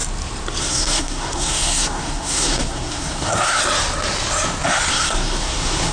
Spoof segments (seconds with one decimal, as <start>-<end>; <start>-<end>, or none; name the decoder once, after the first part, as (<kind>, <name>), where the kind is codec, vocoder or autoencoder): 0.6-3.6 (codec, SNAC); 4.9-5.9